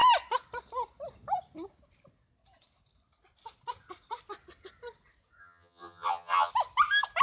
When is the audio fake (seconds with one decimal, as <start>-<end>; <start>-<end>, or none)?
5.4-6.5

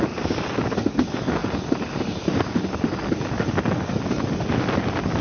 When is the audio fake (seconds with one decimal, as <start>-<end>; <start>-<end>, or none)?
none